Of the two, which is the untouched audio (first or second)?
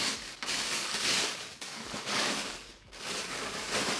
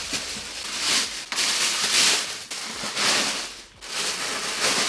second